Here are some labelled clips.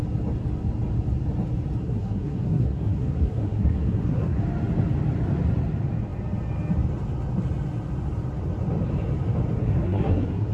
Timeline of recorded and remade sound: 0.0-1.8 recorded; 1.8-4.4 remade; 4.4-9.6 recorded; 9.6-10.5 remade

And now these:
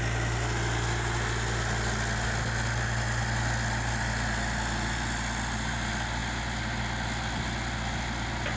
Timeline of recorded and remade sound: 0.0-8.6 recorded

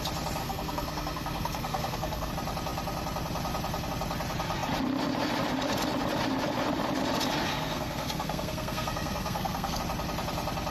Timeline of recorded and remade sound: 0.0-0.4 recorded; 0.4-2.3 remade; 2.3-7.5 recorded; 7.5-9.8 remade; 9.8-10.7 recorded

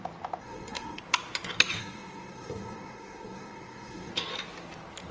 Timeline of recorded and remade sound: 0.0-0.4 recorded; 0.4-1.0 remade; 1.0-1.8 recorded; 1.8-4.1 remade; 4.1-5.1 recorded

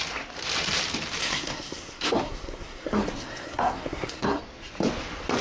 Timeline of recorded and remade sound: 0.0-1.2 recorded; 1.2-4.4 remade; 4.4-5.4 recorded

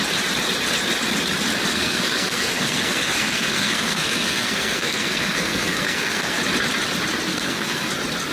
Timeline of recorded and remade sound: 0.0-1.7 recorded; 1.7-6.4 remade; 6.4-7.3 recorded; 7.3-7.9 remade; 7.9-8.3 recorded

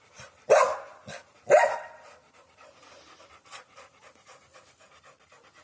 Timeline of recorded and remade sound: 0.0-5.6 recorded